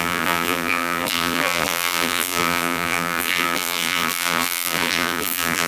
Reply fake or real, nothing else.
fake